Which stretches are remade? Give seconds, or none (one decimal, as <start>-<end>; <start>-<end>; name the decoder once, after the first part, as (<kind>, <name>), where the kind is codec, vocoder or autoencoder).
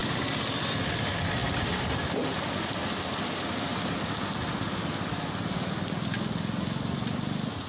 none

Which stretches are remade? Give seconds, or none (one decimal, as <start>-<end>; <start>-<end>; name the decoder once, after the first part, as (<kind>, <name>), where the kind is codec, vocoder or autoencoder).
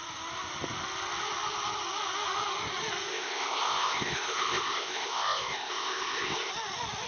3.1-6.5 (codec, ZipCodec)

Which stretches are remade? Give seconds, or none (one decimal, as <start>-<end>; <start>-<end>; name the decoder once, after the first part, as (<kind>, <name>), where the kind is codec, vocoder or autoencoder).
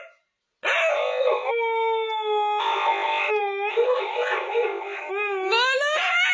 0.9-1.5 (codec, ZipCodec); 2.6-3.3; 3.7-5.1